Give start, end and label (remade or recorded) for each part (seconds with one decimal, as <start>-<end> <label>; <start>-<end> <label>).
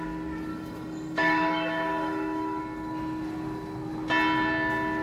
0.0-0.5 recorded; 0.5-2.6 remade; 2.6-5.0 recorded